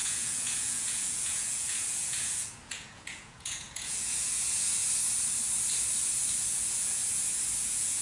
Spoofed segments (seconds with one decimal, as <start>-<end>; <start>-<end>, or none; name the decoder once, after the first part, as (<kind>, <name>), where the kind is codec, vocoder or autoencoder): 0.0-4.8 (vocoder, Vocos); 6.5-7.0; 7.6-8.0